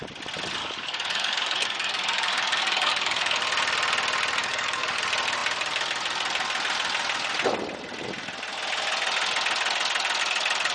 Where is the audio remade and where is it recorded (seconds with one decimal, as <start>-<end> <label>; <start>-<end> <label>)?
0.0-0.6 recorded; 0.6-3.4 remade; 3.4-4.4 recorded; 4.4-5.0 remade; 5.0-10.7 recorded